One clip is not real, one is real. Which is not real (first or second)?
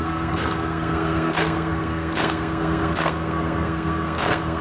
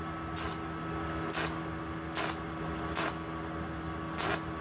first